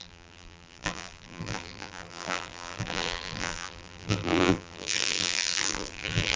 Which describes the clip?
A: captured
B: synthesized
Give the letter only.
B